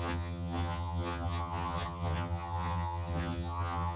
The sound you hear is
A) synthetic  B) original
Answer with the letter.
A